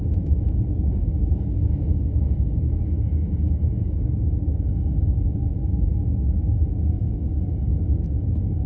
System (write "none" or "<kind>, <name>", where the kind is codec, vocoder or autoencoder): autoencoder, DAC-VAE